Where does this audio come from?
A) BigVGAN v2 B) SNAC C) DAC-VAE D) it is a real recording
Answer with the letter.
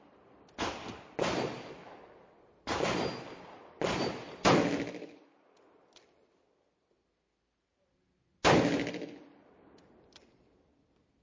D